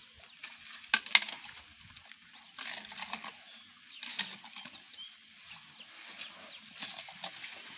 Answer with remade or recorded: recorded